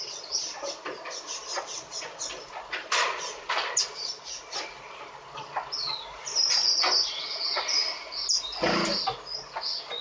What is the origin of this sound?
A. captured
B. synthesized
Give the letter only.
A